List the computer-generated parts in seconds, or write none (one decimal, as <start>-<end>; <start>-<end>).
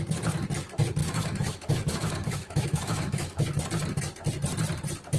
1.0-3.4